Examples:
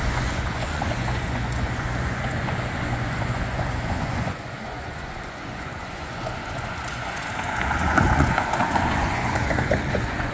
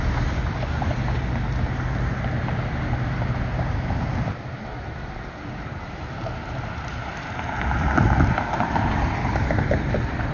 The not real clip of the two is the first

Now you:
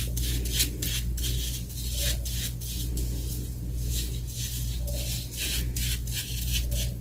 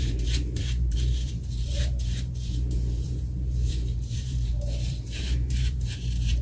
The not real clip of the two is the second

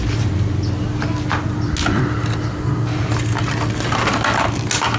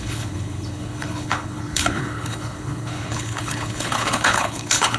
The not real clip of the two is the second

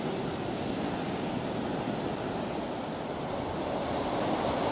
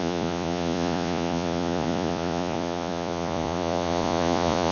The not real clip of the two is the second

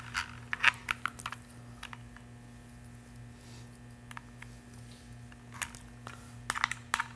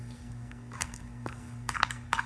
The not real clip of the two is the second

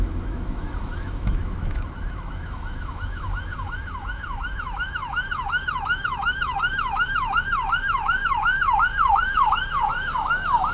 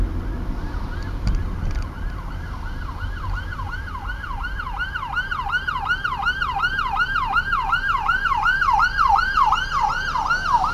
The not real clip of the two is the first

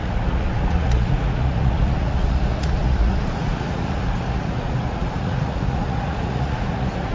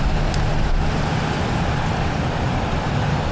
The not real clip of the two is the first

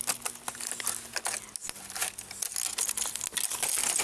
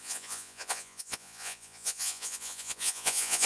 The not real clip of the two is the second